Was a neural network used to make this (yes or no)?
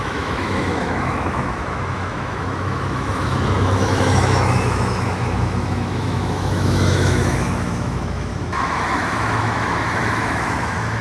yes